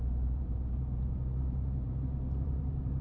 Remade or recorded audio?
remade